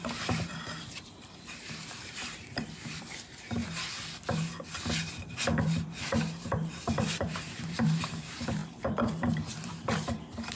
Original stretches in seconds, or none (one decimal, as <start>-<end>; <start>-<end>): 3.6-6.0